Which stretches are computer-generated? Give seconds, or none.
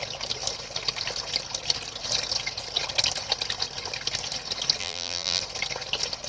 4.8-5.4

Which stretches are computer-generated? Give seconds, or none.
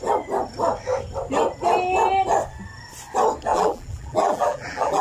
3.5-5.0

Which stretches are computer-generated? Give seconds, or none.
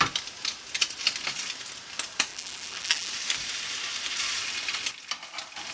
2.3-3.1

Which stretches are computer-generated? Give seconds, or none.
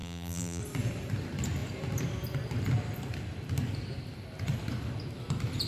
0.0-0.6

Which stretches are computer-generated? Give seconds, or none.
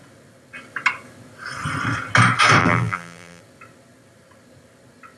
2.6-3.4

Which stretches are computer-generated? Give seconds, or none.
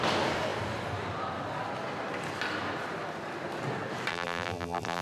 4.1-5.0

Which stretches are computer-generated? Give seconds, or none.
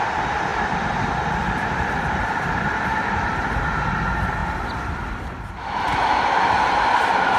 0.5-3.6; 4.4-5.1